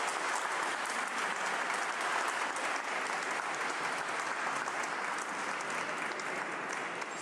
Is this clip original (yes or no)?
yes